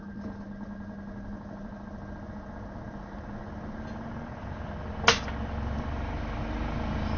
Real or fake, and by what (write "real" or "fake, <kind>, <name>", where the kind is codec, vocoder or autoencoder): real